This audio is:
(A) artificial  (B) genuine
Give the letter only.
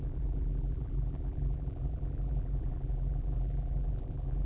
A